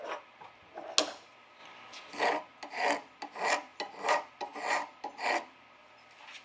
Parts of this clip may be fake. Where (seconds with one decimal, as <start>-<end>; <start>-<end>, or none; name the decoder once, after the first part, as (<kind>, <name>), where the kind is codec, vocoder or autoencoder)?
none